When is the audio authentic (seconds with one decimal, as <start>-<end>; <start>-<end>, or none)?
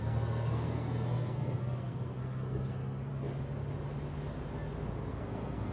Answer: 3.1-5.1